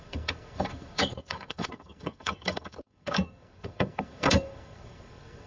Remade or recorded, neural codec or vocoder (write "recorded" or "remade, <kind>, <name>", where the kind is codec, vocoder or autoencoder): remade, codec, SNAC